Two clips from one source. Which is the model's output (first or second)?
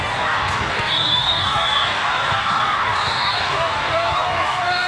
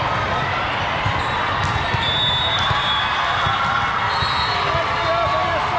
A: first